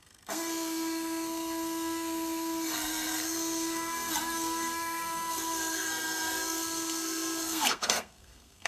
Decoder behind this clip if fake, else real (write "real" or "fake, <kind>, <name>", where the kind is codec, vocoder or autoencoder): fake, codec, SNAC